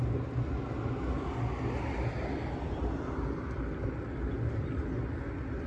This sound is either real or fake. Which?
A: real